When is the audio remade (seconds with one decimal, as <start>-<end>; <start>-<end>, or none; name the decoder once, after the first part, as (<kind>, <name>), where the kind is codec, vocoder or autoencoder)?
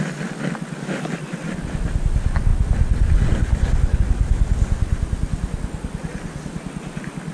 none